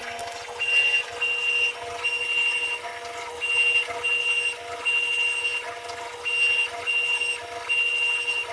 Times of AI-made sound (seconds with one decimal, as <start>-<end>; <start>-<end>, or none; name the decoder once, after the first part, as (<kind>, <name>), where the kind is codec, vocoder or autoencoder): none